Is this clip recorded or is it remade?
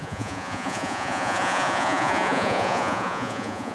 remade